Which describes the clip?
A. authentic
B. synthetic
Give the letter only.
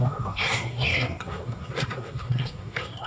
B